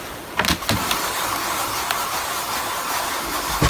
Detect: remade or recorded recorded